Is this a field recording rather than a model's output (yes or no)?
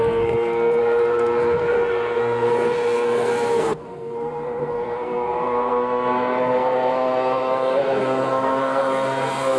no